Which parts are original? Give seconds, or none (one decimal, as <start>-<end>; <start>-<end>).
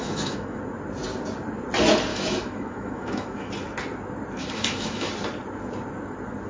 0.6-2.1; 3.5-4.4; 5.1-6.5